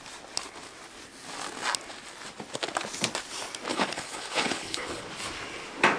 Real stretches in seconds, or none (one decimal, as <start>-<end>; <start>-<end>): 0.0-3.7; 5.1-6.0